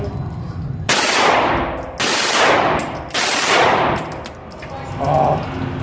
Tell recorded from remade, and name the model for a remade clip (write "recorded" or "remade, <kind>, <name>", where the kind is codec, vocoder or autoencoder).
recorded